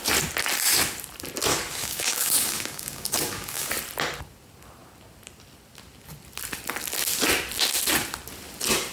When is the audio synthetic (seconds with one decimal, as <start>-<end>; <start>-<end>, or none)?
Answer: 1.5-3.7